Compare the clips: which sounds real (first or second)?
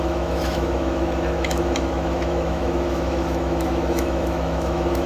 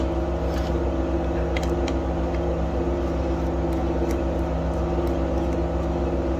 second